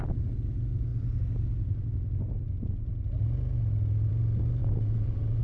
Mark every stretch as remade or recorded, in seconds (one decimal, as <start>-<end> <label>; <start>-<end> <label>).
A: 0.0-4.6 recorded; 4.6-5.4 remade